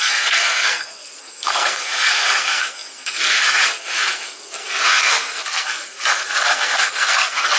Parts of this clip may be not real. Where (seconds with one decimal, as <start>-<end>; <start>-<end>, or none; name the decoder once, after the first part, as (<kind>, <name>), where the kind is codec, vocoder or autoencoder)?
0.0-7.6 (codec, SNAC)